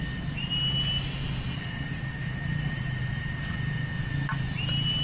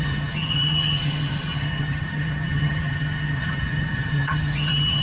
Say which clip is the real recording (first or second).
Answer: first